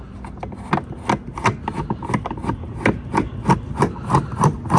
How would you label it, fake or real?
real